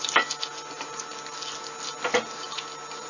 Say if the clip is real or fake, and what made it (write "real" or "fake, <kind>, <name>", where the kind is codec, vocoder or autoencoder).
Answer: real